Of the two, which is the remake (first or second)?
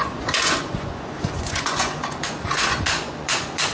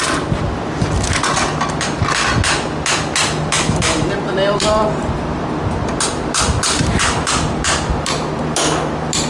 first